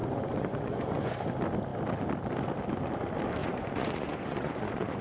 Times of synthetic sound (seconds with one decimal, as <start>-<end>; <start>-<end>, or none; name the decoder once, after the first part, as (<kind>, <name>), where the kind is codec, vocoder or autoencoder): 0.0-1.1 (vocoder, Vocos); 3.4-5.0